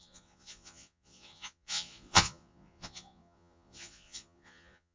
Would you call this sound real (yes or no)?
no